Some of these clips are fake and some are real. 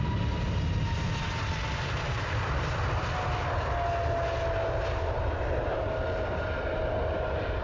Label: real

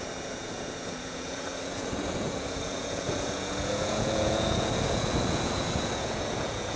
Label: fake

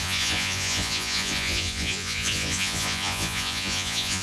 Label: fake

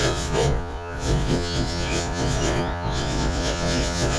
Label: fake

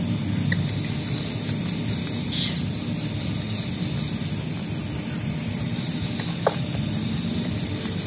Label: real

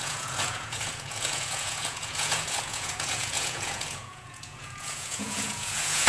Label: fake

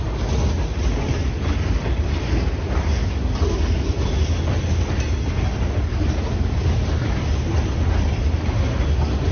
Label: real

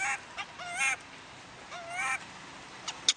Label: real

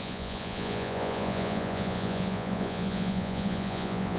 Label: fake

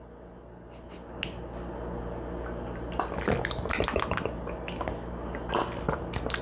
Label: real